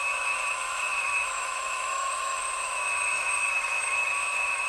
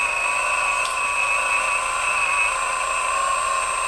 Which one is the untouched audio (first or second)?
second